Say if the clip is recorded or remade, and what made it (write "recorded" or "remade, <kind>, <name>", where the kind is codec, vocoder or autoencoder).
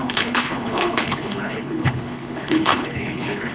remade, codec, HILCodec